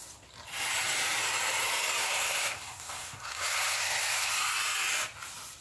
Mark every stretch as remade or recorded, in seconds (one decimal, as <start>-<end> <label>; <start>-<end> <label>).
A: 0.0-2.0 recorded; 2.0-4.3 remade; 4.3-5.6 recorded